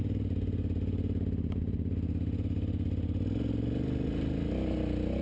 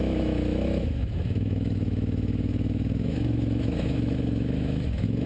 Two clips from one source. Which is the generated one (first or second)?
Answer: second